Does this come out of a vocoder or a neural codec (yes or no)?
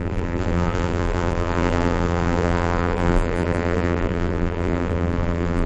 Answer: yes